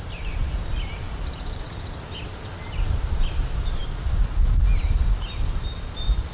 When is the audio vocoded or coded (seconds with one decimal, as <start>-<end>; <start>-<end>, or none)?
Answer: none